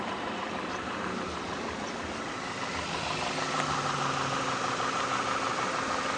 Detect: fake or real real